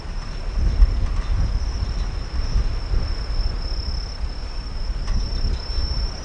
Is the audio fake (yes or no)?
no